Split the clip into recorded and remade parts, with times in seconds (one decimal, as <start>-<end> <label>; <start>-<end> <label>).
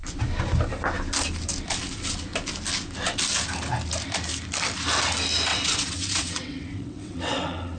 0.0-5.5 recorded; 5.5-7.8 remade